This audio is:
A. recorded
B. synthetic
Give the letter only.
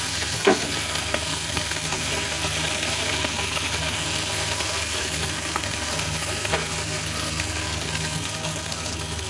B